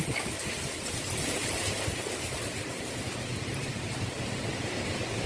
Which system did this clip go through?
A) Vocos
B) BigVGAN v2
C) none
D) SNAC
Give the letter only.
B